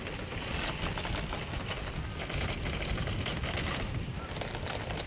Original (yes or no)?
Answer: yes